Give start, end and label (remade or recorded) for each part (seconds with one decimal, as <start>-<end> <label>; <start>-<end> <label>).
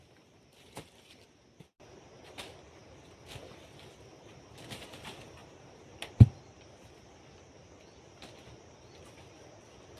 0.0-5.4 recorded; 5.4-7.3 remade; 7.3-10.0 recorded